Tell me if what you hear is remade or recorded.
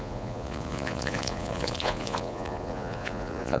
remade